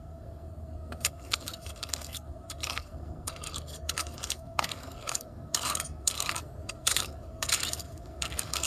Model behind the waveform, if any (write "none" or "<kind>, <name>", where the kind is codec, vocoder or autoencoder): codec, SNAC